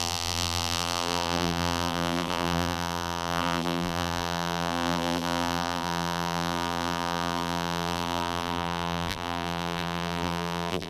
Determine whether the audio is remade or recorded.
remade